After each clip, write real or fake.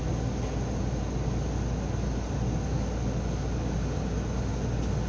real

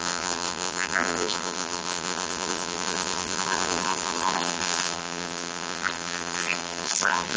fake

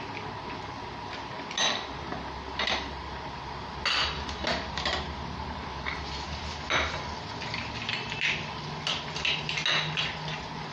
real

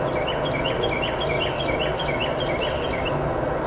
real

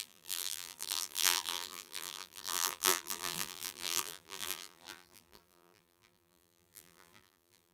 fake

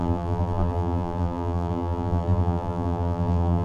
fake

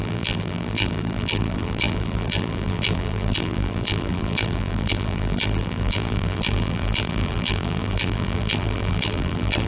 fake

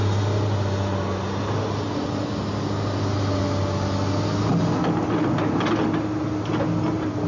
real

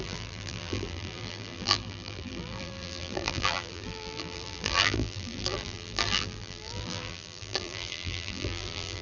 fake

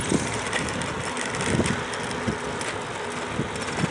real